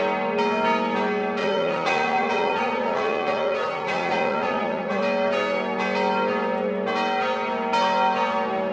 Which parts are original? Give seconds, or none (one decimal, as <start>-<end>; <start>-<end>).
0.0-1.4; 5.0-8.7